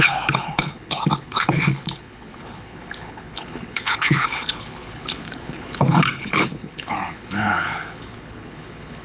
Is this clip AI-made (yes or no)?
yes